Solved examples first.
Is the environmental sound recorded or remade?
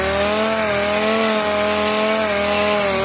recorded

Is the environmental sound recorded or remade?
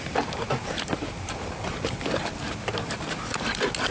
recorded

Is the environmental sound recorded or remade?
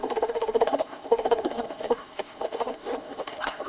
remade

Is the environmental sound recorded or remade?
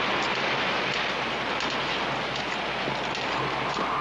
recorded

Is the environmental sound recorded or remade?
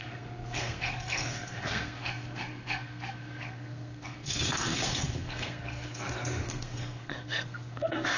remade